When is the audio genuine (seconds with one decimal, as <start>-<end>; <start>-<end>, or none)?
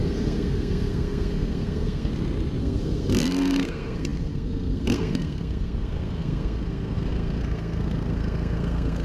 2.1-2.6